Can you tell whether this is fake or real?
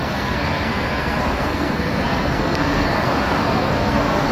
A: fake